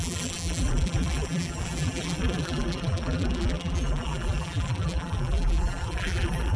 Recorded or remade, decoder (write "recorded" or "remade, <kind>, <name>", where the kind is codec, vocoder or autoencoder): remade, vocoder, BigVGAN v2